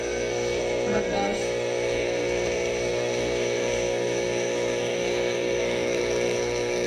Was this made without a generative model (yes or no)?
no